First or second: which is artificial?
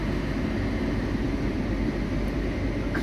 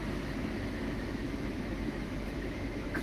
second